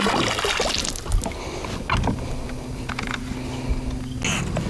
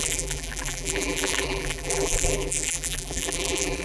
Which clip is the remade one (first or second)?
second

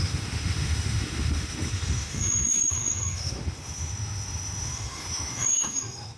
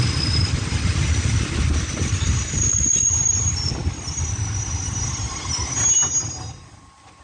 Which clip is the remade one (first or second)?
first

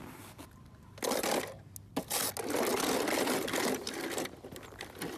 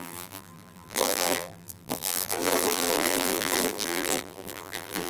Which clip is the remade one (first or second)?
second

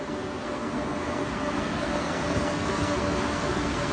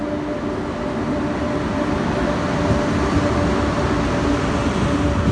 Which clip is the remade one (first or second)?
first